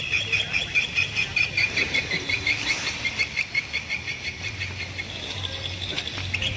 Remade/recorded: recorded